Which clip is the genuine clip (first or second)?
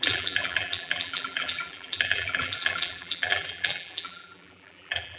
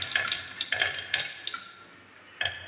second